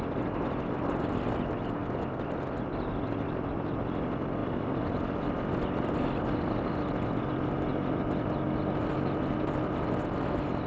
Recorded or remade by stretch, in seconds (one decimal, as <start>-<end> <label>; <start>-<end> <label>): 0.0-4.4 recorded; 4.4-5.6 remade; 5.6-10.7 recorded